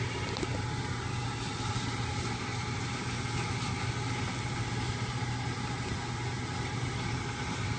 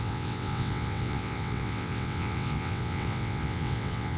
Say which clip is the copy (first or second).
second